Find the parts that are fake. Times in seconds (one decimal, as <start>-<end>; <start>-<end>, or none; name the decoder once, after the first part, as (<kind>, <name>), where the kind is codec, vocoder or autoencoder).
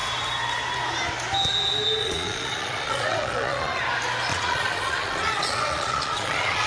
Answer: 2.0-3.8 (vocoder, Vocos); 4.3-6.7